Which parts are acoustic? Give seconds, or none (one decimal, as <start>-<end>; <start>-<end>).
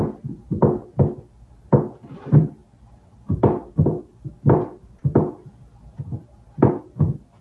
0.0-7.4